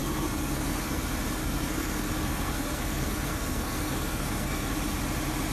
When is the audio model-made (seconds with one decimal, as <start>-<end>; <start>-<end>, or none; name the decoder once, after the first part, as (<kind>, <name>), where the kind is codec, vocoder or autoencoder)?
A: 0.0-1.0 (codec, SNAC); 1.4-4.7